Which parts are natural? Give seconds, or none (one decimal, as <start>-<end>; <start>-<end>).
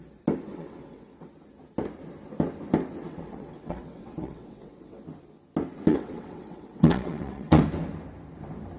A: 0.0-0.5; 1.3-3.0; 5.0-5.9; 7.6-8.8